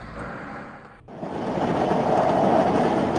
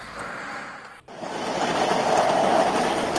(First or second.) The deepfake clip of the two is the second